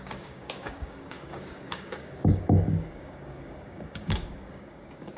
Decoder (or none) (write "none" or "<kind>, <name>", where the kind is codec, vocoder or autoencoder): codec, DAC